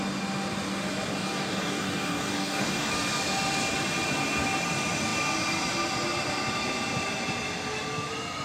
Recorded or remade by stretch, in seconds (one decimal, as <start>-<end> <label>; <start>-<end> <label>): 0.0-1.1 recorded; 1.1-2.9 remade; 2.9-8.4 recorded